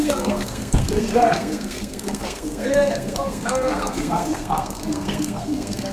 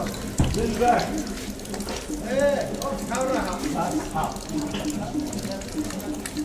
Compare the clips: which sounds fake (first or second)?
first